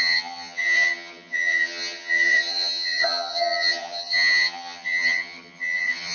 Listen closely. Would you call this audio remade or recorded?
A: remade